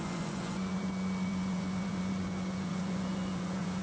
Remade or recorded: remade